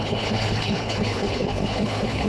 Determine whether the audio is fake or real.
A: fake